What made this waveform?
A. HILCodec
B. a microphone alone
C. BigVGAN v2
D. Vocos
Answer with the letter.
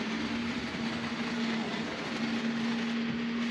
B